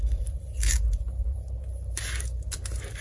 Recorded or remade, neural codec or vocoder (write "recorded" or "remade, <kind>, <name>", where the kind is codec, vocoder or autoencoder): remade, vocoder, BigVGAN v2